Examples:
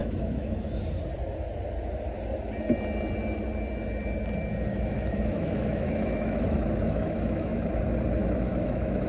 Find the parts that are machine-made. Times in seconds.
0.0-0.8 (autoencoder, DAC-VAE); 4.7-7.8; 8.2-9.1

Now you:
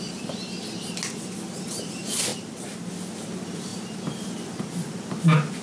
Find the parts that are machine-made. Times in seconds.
none

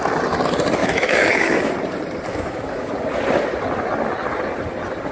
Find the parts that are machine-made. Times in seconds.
0.8-1.7 (autoencoder, DAC-VAE); 2.3-2.9

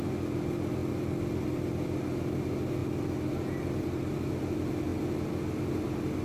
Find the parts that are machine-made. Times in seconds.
none

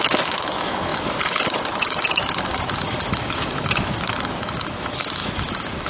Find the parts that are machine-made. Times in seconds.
0.0-5.9 (autoencoder, DAC-VAE)